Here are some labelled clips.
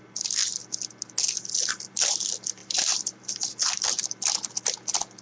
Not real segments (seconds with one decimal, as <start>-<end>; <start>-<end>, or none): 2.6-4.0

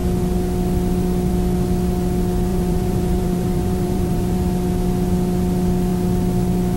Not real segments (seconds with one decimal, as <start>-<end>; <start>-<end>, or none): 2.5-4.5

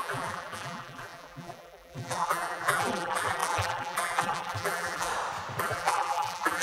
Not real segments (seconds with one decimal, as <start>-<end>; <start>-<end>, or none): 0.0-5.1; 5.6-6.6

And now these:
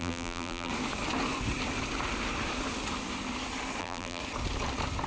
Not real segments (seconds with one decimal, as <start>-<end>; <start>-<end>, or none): 0.0-0.7; 3.8-4.2